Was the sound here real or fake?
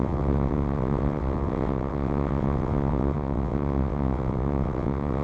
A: fake